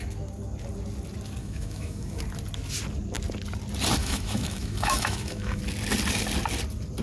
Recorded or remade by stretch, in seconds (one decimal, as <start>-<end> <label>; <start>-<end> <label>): 0.0-1.4 recorded; 1.4-2.2 remade; 2.2-4.0 recorded; 4.0-5.6 remade; 5.6-7.0 recorded